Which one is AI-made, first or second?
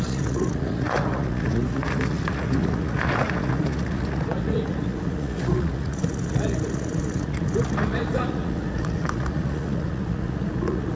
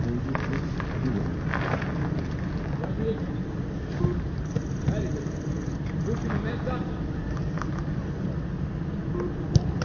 first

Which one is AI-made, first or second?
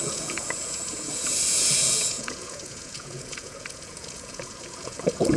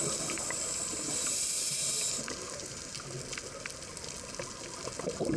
first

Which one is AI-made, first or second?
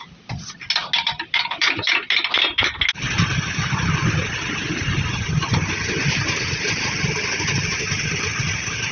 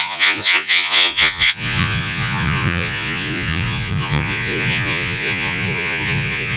second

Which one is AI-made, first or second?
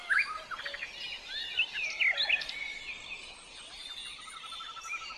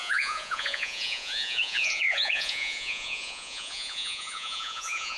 second